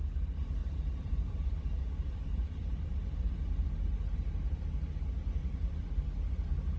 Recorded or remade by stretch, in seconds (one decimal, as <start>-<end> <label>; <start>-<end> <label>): 0.0-0.6 recorded; 0.6-4.6 remade; 4.6-5.4 recorded; 5.4-6.8 remade